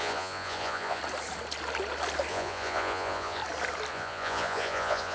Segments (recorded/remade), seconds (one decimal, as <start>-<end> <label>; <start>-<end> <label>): 0.0-1.0 remade; 1.0-2.3 recorded; 2.3-3.4 remade; 3.4-3.9 recorded; 3.9-5.1 remade